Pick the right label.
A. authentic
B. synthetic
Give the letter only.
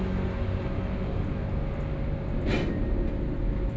A